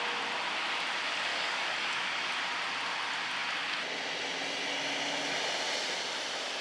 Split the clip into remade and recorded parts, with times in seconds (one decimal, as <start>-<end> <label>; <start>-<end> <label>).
0.0-1.3 recorded; 1.3-2.2 remade; 2.2-6.6 recorded